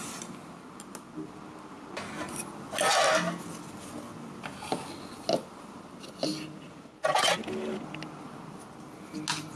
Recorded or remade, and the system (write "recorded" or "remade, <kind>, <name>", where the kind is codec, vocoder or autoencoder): recorded